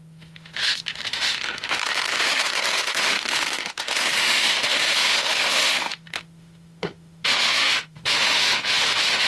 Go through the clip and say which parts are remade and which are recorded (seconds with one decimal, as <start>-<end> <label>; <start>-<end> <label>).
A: 0.0-9.3 remade